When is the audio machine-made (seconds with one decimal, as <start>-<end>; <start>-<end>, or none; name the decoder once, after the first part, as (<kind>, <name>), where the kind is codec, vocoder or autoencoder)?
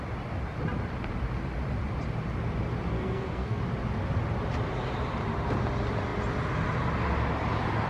2.9-3.6 (codec, SNAC)